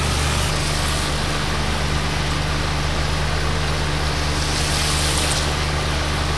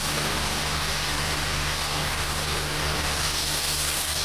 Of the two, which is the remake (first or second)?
second